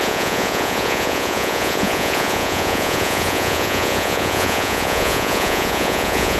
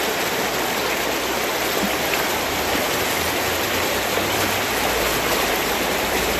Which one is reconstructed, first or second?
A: first